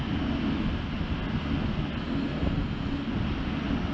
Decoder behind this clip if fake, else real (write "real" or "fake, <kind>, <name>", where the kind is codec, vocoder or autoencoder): real